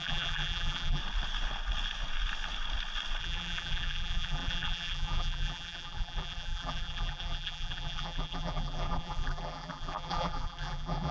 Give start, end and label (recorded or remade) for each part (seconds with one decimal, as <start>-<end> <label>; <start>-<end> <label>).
0.0-1.0 remade; 1.0-3.2 recorded; 3.2-11.1 remade